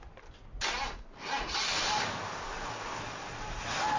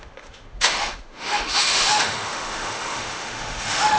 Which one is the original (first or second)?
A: first